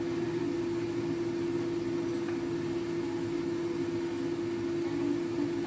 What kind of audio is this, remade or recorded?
recorded